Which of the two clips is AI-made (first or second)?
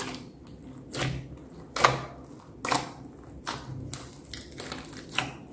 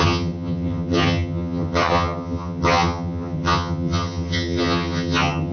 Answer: second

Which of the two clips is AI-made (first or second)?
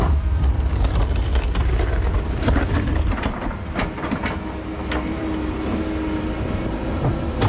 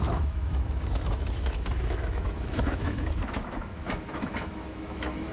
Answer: second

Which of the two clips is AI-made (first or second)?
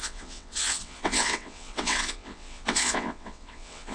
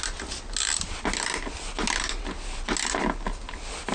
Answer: first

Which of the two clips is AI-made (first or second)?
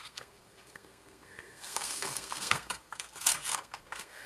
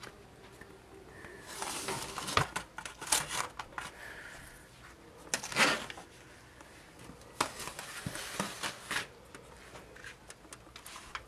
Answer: first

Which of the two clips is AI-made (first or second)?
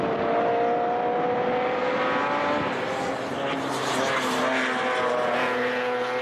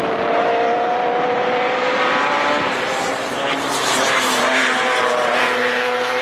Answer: second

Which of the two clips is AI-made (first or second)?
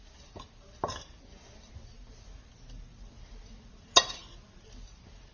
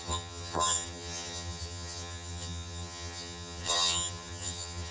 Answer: second